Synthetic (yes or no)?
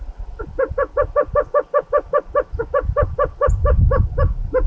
no